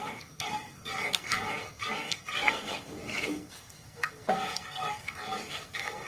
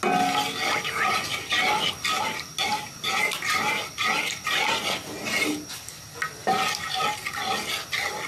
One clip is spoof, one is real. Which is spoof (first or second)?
first